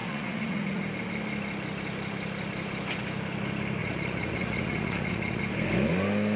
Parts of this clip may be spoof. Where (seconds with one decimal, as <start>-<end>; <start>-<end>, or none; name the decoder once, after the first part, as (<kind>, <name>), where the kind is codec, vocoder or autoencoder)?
0.0-0.8 (vocoder, Vocos); 3.8-5.4